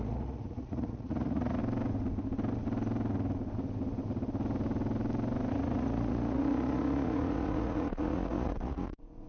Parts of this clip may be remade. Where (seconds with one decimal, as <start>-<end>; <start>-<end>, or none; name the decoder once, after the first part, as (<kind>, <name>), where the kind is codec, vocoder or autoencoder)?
0.0-1.6 (vocoder, Vocos); 5.5-9.3

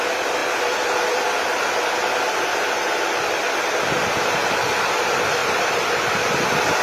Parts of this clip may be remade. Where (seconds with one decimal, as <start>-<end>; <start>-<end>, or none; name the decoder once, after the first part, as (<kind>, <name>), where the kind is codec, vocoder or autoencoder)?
5.4-6.1 (vocoder, BigVGAN v2)

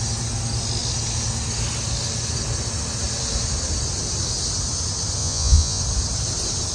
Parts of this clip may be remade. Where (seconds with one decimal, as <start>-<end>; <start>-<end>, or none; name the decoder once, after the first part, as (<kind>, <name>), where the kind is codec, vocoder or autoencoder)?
5.2-5.8 (vocoder, Vocos)

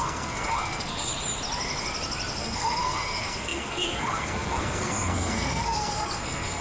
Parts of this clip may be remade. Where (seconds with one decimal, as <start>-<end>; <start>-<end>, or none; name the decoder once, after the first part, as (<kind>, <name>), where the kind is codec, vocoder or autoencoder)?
0.0-1.1 (codec, SNAC); 2.4-6.6

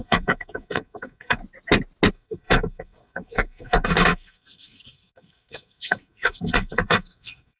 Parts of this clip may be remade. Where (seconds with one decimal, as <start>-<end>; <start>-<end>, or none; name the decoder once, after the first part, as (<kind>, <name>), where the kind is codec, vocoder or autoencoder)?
0.0-1.4 (codec, SNAC); 2.1-7.6

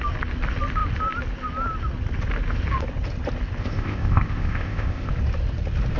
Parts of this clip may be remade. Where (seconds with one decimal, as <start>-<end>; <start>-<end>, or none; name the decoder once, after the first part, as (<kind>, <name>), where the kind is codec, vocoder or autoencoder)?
3.6-5.1 (codec, ZipCodec)

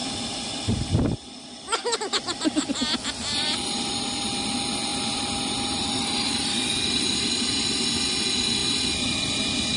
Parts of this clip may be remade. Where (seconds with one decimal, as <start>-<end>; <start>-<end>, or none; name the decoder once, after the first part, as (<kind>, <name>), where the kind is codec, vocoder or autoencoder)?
0.0-4.4 (vocoder, BigVGAN v2); 4.9-8.2; 8.6-9.8